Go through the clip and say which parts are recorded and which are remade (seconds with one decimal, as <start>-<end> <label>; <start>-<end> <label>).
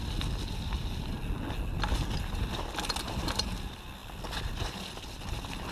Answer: 0.0-5.7 recorded